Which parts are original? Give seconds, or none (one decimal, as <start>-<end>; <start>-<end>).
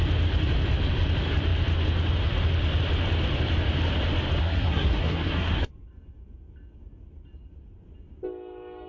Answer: 0.0-4.4; 5.7-8.9